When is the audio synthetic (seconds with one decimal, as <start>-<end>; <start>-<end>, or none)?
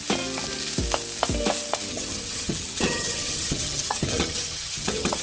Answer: 1.9-5.2